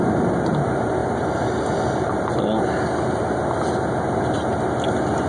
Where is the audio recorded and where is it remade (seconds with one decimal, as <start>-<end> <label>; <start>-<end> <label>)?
0.0-5.3 recorded